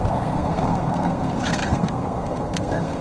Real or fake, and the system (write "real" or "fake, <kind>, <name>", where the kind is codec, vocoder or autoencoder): fake, codec, SNAC